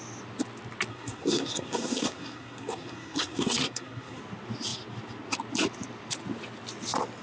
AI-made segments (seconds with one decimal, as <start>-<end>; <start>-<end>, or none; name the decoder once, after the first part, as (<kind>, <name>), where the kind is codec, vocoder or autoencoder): 0.9-4.2 (codec, SNAC)